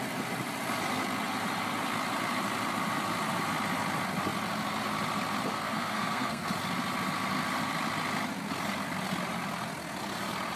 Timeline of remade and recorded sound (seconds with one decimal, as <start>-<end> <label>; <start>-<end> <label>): 0.0-5.5 recorded; 5.5-6.5 remade; 6.5-10.6 recorded